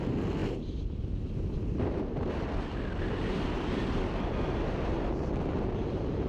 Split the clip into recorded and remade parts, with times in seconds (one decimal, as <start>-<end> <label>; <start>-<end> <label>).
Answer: 0.0-6.3 recorded